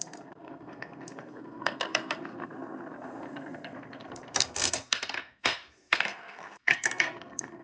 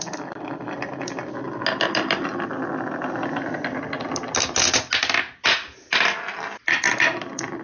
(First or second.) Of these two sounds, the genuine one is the second